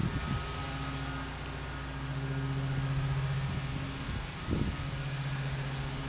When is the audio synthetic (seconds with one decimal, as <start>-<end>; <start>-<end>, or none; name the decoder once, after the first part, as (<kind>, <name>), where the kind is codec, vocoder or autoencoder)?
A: none